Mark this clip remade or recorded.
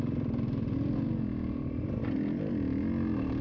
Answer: recorded